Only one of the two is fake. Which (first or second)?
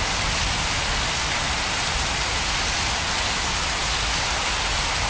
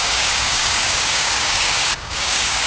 second